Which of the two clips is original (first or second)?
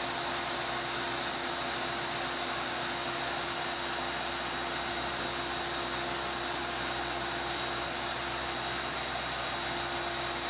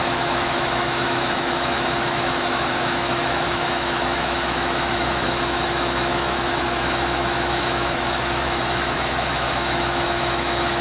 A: first